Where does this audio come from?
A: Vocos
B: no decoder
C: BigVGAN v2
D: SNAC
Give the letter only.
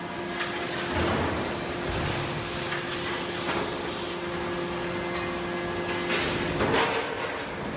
B